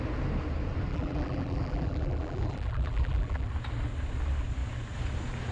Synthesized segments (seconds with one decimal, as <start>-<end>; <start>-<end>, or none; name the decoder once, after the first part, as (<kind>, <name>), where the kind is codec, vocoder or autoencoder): 0.9-3.5 (vocoder, BigVGAN v2)